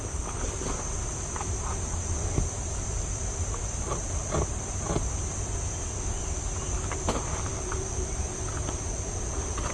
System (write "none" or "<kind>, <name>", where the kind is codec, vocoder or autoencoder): none